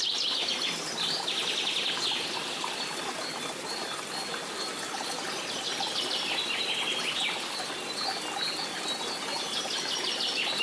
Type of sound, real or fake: real